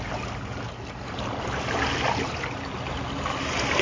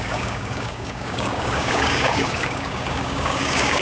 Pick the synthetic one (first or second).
second